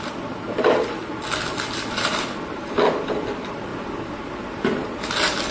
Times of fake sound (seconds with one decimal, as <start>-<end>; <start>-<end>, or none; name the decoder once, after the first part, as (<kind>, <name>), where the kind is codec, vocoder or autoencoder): none